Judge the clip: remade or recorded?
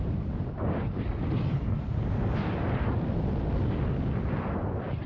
recorded